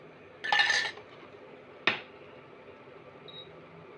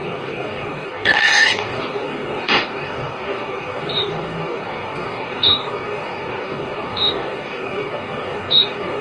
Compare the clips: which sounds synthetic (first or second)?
second